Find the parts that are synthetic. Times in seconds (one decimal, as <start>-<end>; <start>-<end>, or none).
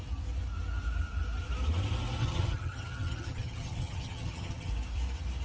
2.2-4.7